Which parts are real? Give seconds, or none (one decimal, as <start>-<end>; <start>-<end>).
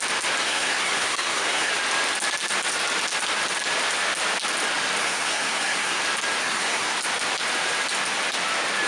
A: 0.0-0.4; 1.7-5.0; 6.0-6.4; 7.0-8.9